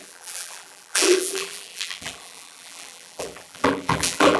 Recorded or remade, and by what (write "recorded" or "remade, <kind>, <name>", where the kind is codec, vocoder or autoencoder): remade, vocoder, BigVGAN v2